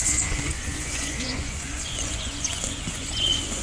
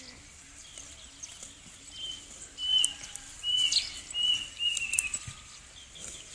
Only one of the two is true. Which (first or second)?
second